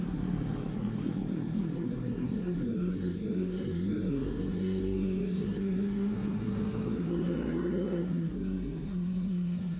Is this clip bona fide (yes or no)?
no